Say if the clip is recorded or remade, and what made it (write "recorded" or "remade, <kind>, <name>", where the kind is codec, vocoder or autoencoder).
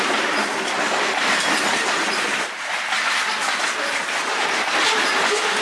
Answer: recorded